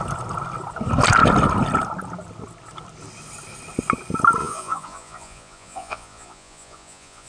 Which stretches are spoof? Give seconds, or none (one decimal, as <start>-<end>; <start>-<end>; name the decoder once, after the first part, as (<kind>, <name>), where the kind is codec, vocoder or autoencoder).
4.4-7.3 (vocoder, Vocos)